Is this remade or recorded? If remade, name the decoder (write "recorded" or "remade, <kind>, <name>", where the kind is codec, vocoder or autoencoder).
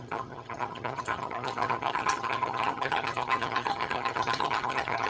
remade, vocoder, HiFi-GAN